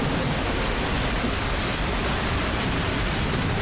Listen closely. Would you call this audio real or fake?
real